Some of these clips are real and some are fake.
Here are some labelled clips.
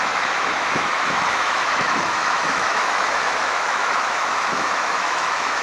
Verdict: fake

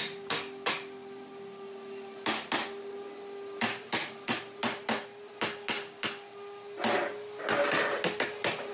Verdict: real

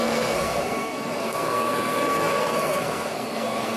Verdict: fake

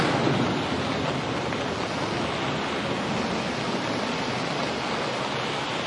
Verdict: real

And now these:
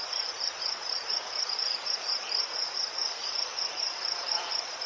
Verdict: fake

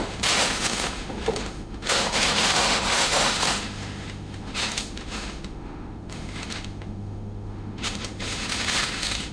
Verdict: fake